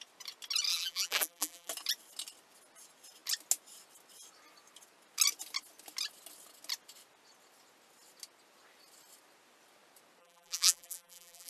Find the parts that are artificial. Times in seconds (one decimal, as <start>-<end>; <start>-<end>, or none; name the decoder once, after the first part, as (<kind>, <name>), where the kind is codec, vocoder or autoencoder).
0.7-1.7 (vocoder, BigVGAN v2); 10.2-11.5